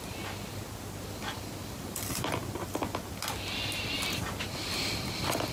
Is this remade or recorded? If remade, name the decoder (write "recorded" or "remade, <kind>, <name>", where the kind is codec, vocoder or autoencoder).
recorded